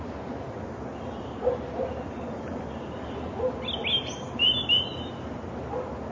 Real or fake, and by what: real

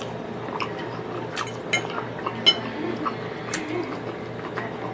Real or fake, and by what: real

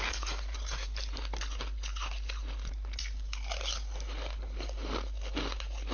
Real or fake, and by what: real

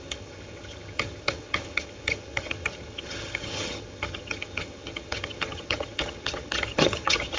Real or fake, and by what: fake, vocoder, HiFi-GAN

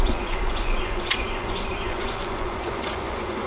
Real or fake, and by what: fake, vocoder, Vocos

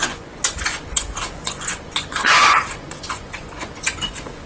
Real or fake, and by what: fake, vocoder, Vocos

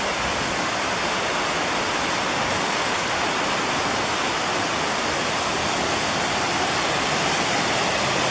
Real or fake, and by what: real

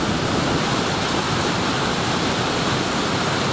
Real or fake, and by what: real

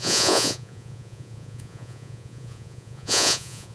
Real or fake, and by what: fake, vocoder, Vocos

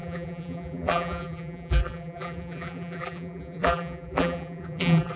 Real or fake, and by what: fake, vocoder, BigVGAN v2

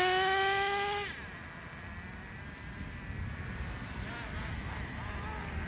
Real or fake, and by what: real